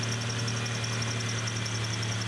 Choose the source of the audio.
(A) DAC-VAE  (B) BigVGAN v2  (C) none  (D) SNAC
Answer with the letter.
C